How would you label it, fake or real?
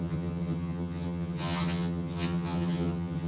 fake